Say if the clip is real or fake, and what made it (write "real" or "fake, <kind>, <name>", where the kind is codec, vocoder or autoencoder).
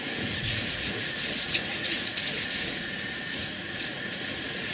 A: fake, vocoder, Vocos